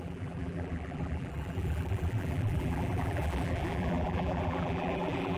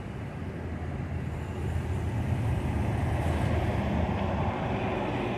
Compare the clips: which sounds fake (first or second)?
first